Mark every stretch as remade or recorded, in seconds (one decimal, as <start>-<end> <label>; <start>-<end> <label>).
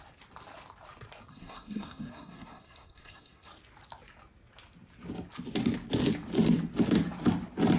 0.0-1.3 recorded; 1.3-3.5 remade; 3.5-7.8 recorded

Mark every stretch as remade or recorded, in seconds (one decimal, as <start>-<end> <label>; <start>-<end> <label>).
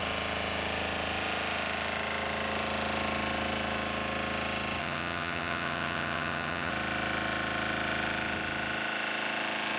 0.0-4.8 recorded; 4.8-6.7 remade; 6.7-9.8 recorded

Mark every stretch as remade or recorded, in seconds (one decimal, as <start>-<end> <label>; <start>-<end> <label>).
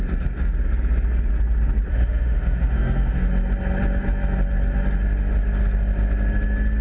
0.0-1.9 recorded; 1.9-3.3 remade; 3.3-6.8 recorded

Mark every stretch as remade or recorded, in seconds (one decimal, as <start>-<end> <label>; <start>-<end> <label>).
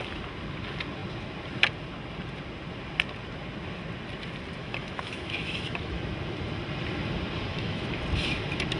0.0-4.6 recorded; 4.6-6.0 remade; 6.0-7.5 recorded; 7.5-8.0 remade; 8.0-8.8 recorded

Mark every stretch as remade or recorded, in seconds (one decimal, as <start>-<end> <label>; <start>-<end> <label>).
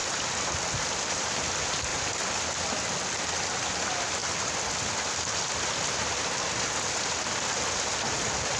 0.0-1.1 recorded; 1.1-4.2 remade; 4.2-7.9 recorded; 7.9-8.6 remade